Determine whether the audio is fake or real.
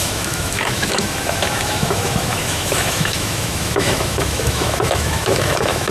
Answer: fake